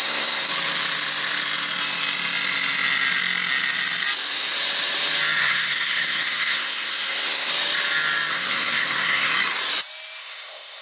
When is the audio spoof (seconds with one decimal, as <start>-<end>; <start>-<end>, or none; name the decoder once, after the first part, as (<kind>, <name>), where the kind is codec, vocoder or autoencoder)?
0.0-0.5 (codec, SNAC); 5.4-7.5; 8.3-9.3; 10.2-10.8